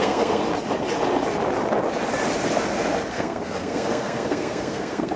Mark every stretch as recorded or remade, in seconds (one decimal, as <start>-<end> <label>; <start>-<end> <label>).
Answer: 0.0-0.4 remade; 0.4-3.1 recorded; 3.1-5.2 remade